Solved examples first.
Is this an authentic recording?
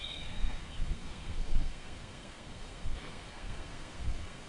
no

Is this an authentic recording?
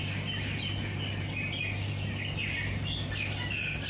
yes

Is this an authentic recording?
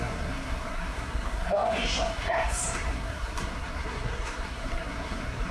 no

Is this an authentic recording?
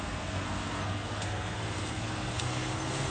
no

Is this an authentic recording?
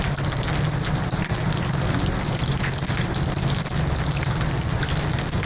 yes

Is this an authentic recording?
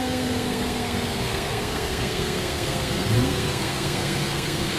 no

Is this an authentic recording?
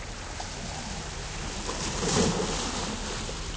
yes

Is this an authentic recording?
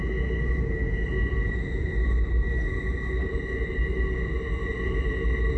yes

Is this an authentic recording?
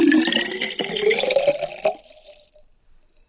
yes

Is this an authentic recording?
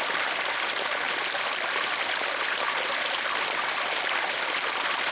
yes